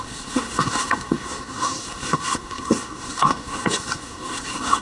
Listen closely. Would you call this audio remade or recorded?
remade